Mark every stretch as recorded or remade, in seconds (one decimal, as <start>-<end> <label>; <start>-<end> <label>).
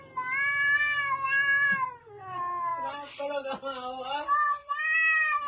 0.0-2.0 recorded; 2.0-2.7 remade; 2.7-5.5 recorded